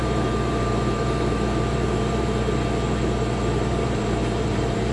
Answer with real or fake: fake